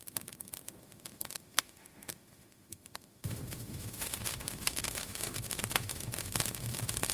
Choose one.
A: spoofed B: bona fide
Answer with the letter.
A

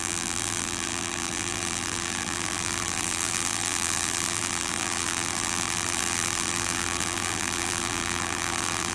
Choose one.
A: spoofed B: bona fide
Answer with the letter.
A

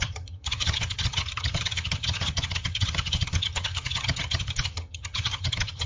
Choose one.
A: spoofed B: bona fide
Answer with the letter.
A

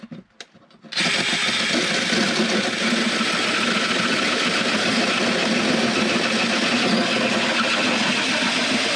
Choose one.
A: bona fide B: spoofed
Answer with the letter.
A